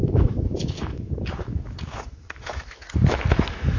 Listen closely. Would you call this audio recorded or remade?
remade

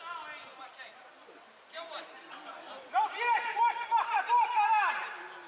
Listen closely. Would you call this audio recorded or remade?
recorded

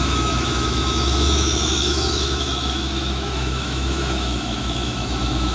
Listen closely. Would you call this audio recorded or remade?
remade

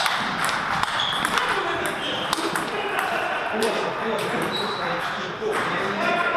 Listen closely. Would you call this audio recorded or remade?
remade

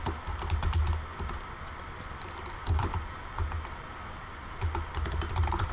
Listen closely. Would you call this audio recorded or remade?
recorded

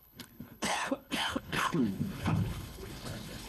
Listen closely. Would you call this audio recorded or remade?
remade